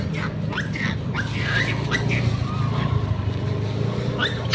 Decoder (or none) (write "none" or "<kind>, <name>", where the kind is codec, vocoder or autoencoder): none